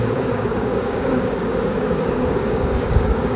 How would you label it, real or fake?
fake